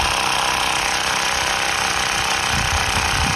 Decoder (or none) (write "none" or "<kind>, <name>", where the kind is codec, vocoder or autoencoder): none